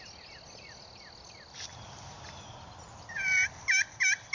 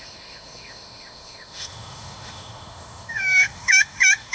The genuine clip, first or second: first